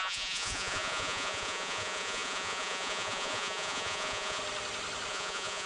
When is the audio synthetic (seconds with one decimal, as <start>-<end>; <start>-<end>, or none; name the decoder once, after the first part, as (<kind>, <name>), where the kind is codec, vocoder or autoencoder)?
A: 0.0-4.4 (vocoder, Vocos); 5.1-5.7